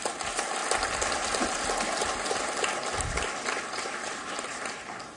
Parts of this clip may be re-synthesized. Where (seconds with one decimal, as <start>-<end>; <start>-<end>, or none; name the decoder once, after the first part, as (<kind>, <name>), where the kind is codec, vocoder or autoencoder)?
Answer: none